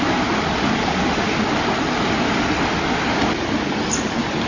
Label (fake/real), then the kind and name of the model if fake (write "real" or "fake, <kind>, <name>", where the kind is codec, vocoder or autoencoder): real